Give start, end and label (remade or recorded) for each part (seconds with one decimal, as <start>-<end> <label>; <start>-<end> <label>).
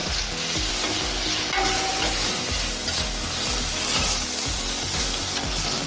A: 0.0-0.7 remade; 0.7-1.9 recorded; 1.9-5.4 remade; 5.4-5.9 recorded